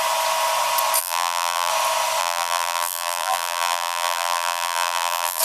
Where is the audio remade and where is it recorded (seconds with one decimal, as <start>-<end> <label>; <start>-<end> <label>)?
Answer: 0.0-1.0 recorded; 1.0-1.7 remade; 1.7-2.2 recorded; 2.2-5.4 remade